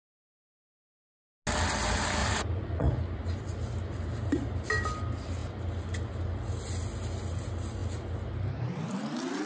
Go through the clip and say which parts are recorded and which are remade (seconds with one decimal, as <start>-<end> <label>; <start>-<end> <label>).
0.0-2.2 recorded; 2.2-2.9 remade; 2.9-9.5 recorded